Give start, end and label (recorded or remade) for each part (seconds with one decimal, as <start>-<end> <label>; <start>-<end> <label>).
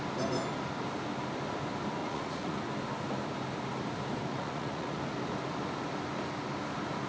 0.0-2.0 recorded; 2.0-2.6 remade; 2.6-4.3 recorded; 4.3-5.0 remade; 5.0-7.1 recorded